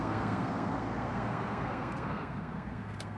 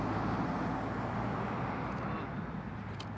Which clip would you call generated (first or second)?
first